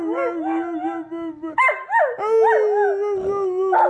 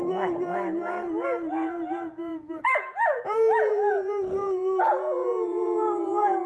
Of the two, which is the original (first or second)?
first